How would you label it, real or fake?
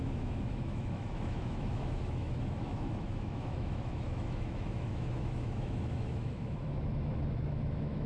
fake